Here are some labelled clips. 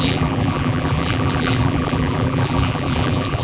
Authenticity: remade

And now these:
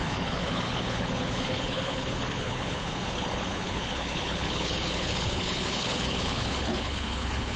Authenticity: remade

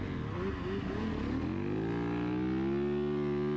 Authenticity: recorded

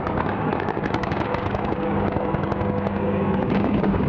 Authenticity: remade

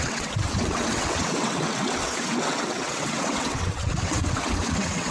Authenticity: remade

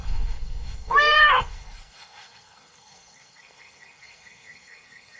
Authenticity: remade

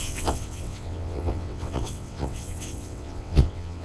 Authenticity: remade